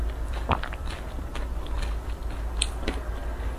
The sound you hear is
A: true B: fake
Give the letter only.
A